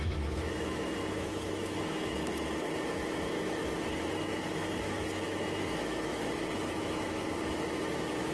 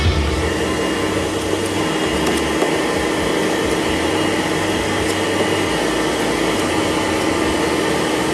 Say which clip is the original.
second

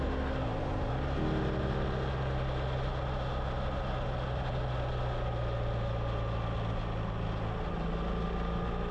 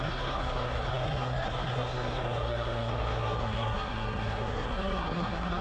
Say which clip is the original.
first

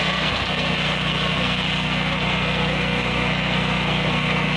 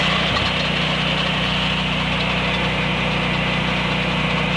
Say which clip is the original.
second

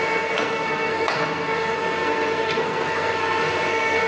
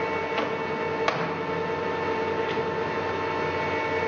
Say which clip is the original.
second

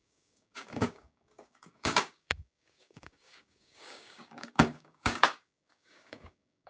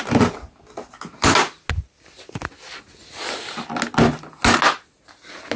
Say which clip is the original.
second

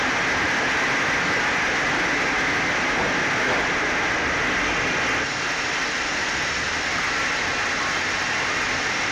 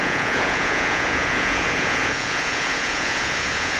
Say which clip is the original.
first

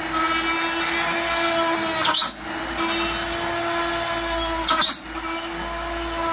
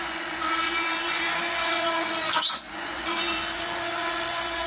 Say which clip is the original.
first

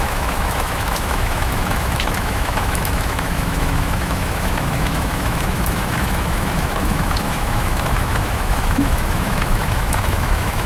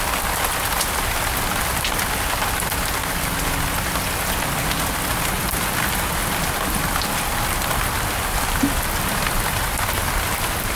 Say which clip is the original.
second